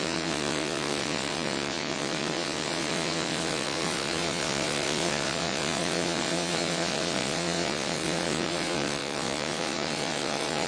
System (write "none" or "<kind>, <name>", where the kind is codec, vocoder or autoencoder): vocoder, WaveNeXt